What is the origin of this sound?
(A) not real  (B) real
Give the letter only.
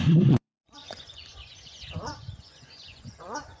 A